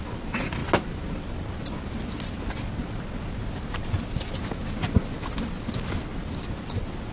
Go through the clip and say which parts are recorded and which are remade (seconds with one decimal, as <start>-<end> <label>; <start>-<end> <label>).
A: 0.0-7.1 recorded